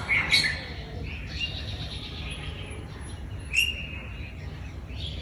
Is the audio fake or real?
real